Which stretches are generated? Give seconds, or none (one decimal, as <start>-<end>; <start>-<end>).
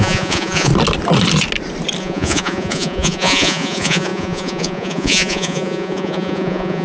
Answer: 0.0-0.7; 2.0-6.8